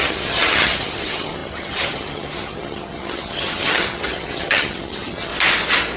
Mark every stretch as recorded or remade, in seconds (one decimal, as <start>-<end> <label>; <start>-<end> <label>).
0.0-5.3 remade; 5.3-6.0 recorded